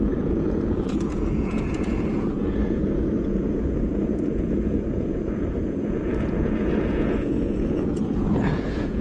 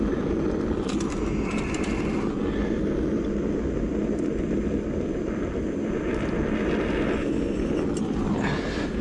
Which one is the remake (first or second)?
first